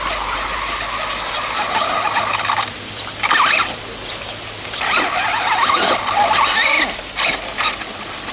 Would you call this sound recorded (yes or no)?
yes